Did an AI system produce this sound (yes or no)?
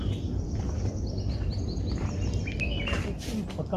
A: no